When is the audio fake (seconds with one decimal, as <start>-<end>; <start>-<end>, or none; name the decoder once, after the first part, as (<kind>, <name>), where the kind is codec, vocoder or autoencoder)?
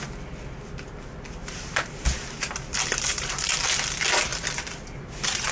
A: 1.4-3.5 (vocoder, BigVGAN v2)